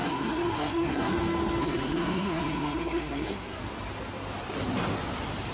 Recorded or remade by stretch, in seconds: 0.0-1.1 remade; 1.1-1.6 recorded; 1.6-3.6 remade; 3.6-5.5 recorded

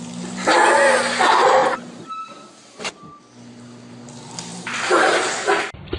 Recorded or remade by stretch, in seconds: 0.0-1.6 recorded; 1.6-3.2 remade; 3.2-4.5 recorded; 4.5-5.3 remade; 5.3-6.0 recorded

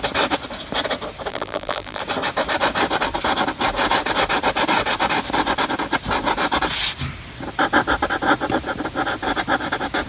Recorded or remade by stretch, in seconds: 0.0-1.3 recorded; 1.3-2.0 remade; 2.0-10.1 recorded

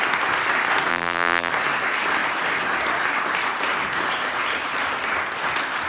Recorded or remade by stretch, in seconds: 0.0-0.9 recorded; 0.9-1.5 remade; 1.5-5.9 recorded

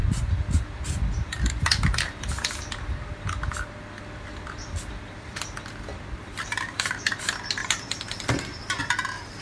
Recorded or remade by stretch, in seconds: 0.0-4.0 recorded; 4.0-9.4 remade

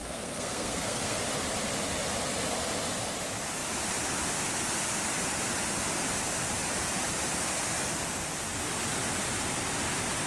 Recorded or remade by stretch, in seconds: 0.0-1.2 remade; 1.2-10.3 recorded

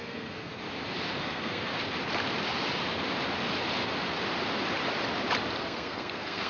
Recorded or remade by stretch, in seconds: 0.0-0.5 remade; 0.5-1.2 recorded; 1.2-1.7 remade; 1.7-5.6 recorded; 5.6-6.5 remade

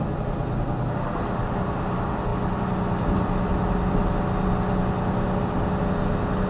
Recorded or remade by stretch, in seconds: 0.0-6.5 recorded